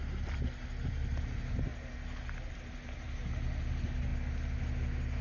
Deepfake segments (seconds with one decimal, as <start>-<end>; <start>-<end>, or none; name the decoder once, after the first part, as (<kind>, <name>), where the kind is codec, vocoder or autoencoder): none